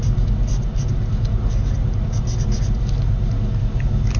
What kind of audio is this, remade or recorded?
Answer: recorded